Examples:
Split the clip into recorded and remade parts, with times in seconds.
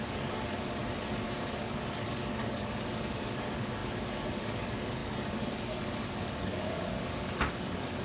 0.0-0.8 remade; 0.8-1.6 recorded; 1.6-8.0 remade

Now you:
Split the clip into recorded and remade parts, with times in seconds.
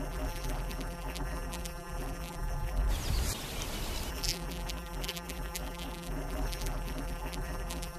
0.0-2.9 remade; 2.9-4.1 recorded; 4.1-8.0 remade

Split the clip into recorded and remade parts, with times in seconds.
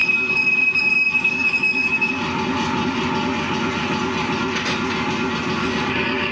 0.0-2.1 remade; 2.1-5.6 recorded; 5.6-6.3 remade